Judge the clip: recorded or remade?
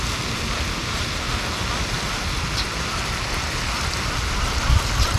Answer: recorded